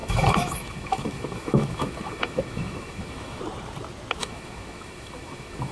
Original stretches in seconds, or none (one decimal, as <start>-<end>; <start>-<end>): 3.4-4.2